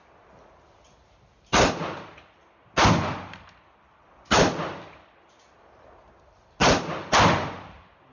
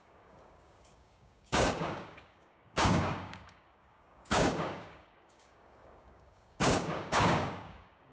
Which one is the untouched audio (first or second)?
first